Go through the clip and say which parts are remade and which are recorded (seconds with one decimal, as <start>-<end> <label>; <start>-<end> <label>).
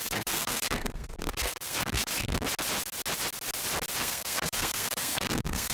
0.0-2.1 remade; 2.1-4.0 recorded; 4.0-5.7 remade